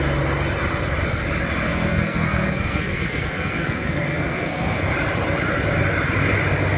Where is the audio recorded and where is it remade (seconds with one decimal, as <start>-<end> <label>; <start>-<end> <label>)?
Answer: 0.0-1.6 recorded; 1.6-4.8 remade; 4.8-6.8 recorded